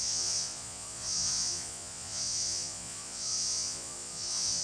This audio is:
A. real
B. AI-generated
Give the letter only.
B